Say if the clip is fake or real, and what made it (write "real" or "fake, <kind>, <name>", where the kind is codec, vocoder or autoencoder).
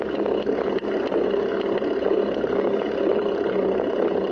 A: real